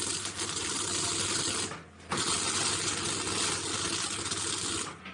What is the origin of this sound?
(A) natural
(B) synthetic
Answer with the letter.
A